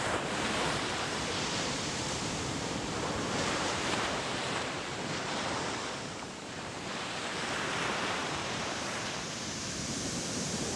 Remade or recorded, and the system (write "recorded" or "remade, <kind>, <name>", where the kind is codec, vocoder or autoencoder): remade, vocoder, BigVGAN v2